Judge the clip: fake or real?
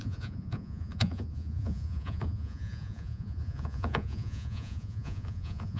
fake